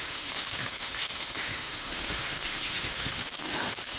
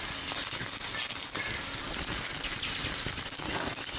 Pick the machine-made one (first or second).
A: first